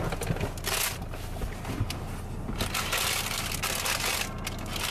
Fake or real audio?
real